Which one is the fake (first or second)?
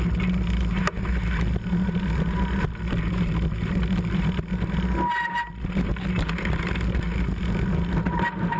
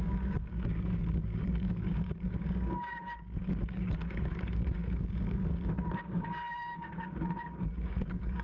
second